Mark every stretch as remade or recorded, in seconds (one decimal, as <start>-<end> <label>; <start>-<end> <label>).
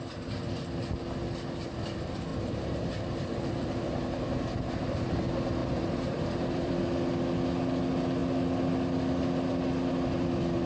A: 0.0-2.3 recorded; 2.3-4.7 remade; 4.7-5.6 recorded; 5.6-6.7 remade; 6.7-10.7 recorded